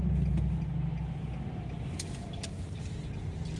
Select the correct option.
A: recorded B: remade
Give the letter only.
A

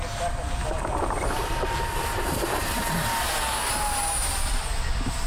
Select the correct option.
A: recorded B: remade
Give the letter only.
A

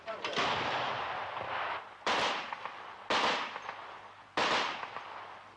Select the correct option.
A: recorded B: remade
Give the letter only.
A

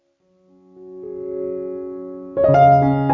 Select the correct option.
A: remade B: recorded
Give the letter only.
B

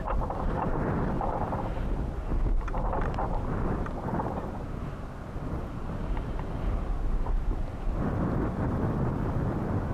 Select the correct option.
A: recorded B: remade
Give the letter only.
A